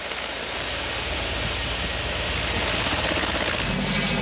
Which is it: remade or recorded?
recorded